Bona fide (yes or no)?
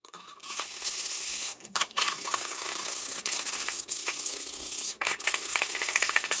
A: no